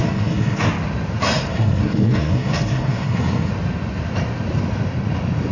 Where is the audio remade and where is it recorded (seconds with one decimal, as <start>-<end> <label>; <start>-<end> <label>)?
0.0-0.7 remade; 0.7-1.5 recorded; 1.5-3.5 remade; 3.5-5.5 recorded